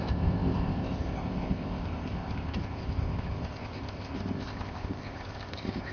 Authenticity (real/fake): fake